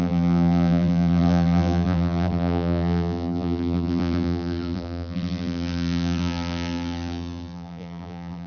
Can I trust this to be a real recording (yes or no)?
no